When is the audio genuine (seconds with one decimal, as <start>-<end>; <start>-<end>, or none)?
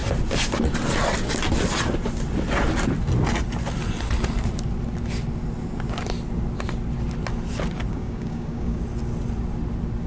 0.0-7.9; 8.8-10.1